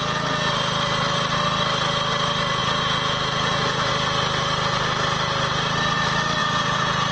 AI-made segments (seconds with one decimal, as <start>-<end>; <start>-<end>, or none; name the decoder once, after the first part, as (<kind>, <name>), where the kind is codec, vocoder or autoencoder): 2.6-3.9 (vocoder, Vocos); 6.4-7.1